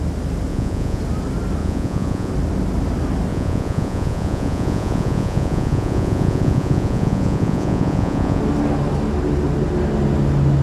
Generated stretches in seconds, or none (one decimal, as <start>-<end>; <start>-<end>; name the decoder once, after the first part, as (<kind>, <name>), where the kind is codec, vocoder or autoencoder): 0.5-1.0 (vocoder, Vocos); 1.6-2.3; 3.3-8.4